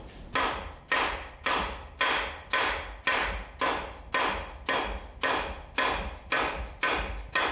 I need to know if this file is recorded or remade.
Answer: recorded